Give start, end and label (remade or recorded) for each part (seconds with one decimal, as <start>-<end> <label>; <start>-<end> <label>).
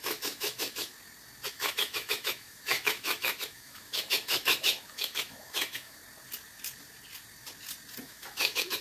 0.0-0.9 remade; 0.9-1.5 recorded; 1.5-6.0 remade; 6.0-8.0 recorded; 8.0-8.8 remade